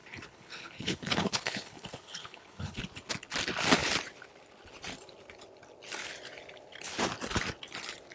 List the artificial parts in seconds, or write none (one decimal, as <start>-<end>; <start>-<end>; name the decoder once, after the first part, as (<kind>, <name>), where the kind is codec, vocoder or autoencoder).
0.0-2.8 (codec, HILCodec)